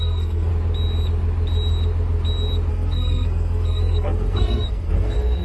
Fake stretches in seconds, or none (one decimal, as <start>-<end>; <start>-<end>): 0.0-0.5; 2.7-5.4